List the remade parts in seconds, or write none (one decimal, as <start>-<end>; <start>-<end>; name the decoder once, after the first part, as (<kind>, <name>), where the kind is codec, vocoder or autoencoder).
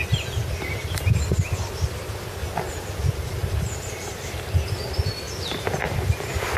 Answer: 0.0-0.9 (vocoder, BigVGAN v2); 2.4-2.9; 3.4-4.9